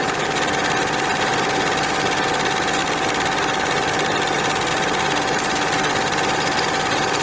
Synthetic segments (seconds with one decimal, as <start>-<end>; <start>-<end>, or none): none